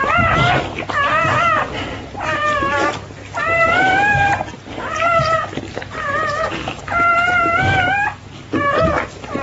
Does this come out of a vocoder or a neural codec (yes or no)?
no